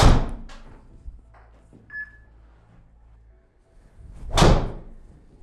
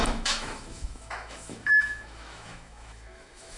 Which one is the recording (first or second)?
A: first